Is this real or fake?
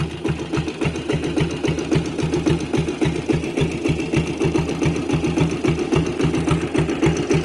real